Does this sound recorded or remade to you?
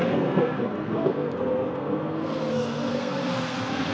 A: remade